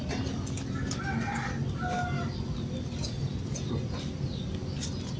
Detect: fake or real real